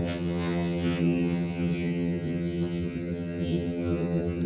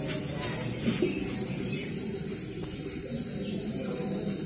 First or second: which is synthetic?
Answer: first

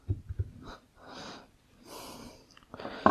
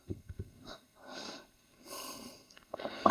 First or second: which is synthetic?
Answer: second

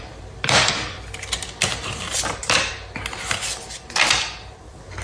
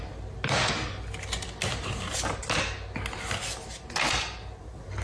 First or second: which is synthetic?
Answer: first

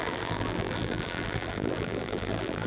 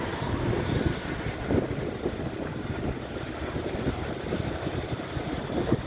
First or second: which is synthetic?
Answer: first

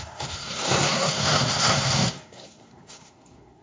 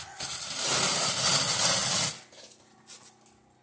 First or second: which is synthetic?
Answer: first